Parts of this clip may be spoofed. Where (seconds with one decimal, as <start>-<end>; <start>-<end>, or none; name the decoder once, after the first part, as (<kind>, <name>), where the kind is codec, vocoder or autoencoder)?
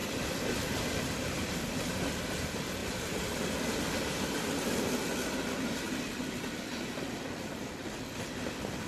0.0-6.7 (vocoder, BigVGAN v2); 7.6-8.9